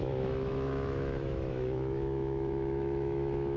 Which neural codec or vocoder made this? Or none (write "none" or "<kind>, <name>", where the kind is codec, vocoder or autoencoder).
autoencoder, DAC-VAE